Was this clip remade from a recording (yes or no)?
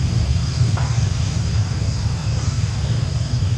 yes